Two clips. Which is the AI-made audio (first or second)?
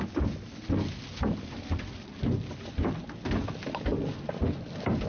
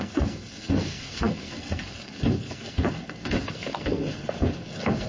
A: second